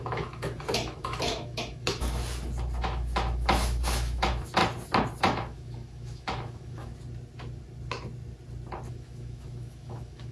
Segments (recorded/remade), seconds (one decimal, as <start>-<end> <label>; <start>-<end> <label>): 0.0-2.2 remade; 2.2-2.8 recorded; 2.8-4.6 remade; 4.6-5.2 recorded; 5.2-6.9 remade; 6.9-8.9 recorded; 8.9-10.3 remade